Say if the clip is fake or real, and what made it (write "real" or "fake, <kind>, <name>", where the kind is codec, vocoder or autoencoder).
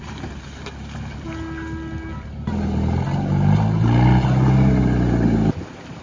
real